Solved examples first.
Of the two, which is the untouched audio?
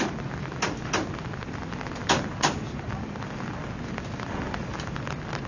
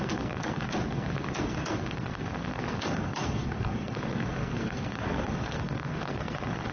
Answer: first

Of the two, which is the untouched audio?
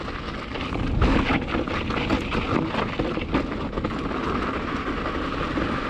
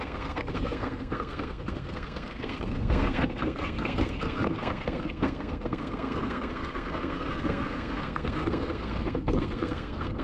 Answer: first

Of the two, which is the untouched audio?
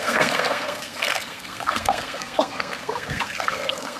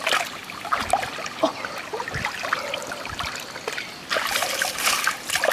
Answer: second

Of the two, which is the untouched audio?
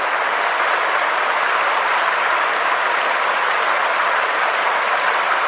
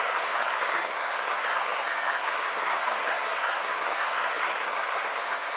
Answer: first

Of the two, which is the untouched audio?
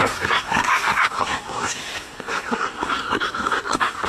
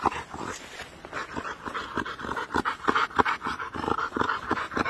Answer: second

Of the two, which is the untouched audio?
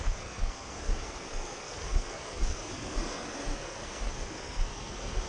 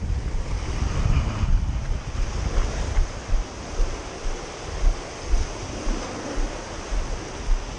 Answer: second